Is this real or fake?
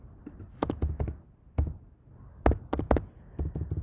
real